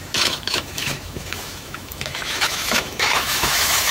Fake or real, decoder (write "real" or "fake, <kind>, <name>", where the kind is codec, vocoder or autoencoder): fake, autoencoder, DAC-VAE